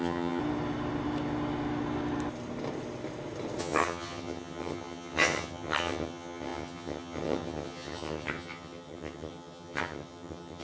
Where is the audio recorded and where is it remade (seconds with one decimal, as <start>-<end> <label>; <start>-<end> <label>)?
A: 0.0-0.4 remade; 0.4-3.6 recorded; 3.6-10.6 remade